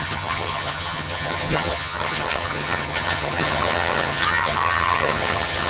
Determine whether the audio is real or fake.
fake